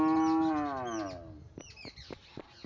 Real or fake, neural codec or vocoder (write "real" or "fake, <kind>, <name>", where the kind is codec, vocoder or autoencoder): real